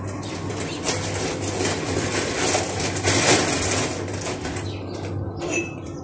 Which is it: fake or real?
real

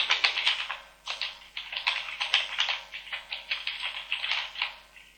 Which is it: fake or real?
real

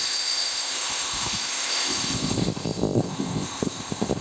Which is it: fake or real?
fake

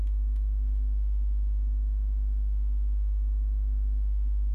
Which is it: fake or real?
fake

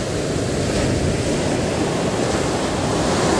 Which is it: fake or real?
real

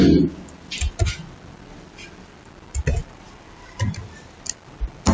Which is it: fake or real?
real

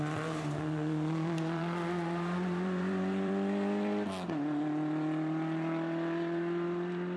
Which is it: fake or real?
fake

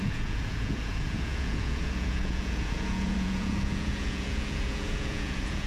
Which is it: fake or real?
fake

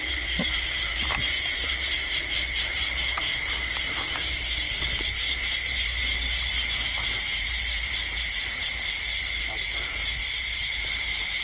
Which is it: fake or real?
fake